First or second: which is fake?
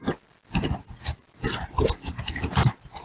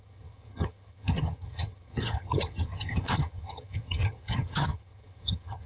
second